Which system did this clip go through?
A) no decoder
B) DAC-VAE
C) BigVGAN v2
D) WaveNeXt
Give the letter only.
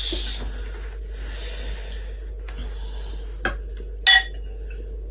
A